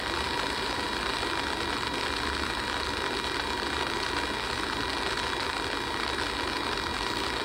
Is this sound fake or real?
real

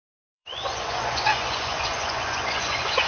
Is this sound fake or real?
fake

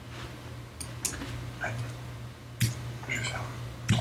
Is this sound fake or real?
real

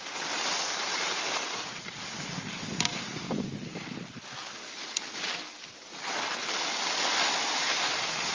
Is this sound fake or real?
real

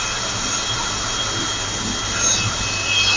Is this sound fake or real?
real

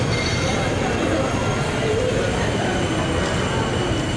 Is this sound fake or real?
real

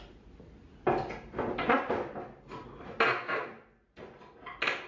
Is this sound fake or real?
real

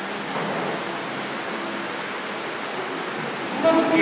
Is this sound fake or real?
real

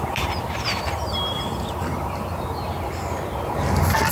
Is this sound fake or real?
real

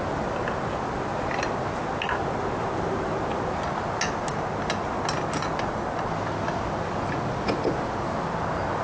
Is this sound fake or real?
real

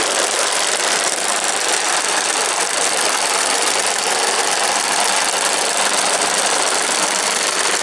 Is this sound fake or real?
real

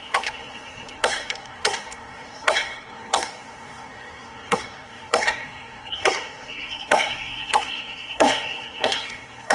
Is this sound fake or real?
fake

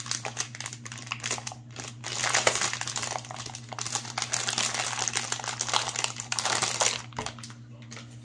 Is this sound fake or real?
real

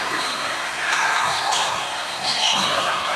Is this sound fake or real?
fake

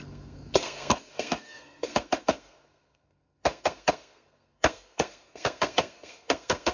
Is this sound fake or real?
fake